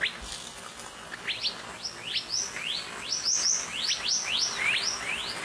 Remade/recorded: recorded